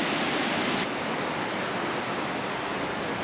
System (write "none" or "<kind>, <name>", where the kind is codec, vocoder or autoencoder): none